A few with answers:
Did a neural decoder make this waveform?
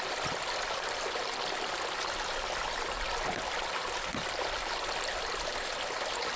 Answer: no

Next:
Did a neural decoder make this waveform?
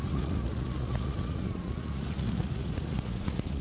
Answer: yes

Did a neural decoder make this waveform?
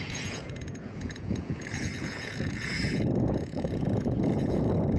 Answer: yes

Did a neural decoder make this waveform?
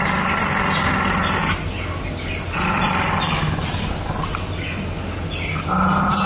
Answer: no